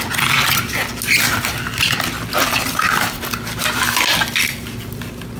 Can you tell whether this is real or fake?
real